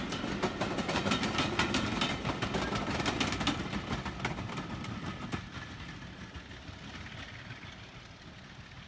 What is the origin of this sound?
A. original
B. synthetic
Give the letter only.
A